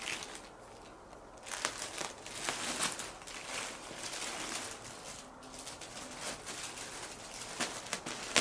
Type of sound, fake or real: real